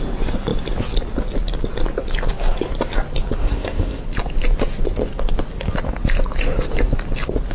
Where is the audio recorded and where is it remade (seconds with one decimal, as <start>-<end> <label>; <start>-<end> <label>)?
0.0-3.4 recorded; 3.4-4.0 remade; 4.0-7.5 recorded